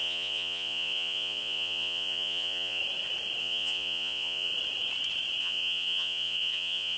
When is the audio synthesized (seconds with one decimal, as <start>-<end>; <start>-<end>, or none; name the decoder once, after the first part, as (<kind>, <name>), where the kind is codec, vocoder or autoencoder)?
0.0-2.8 (vocoder, Vocos); 3.4-4.5; 5.4-7.0